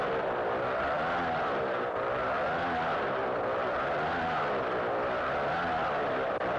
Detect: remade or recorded remade